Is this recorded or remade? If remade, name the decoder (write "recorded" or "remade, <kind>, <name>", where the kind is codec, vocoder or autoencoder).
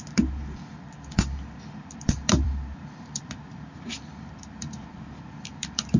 remade, vocoder, BigVGAN v2